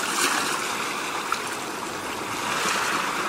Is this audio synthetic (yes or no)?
no